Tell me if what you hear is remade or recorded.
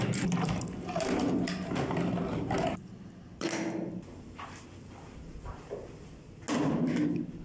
recorded